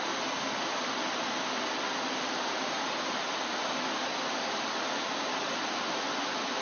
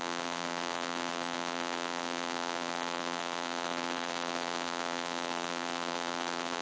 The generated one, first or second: second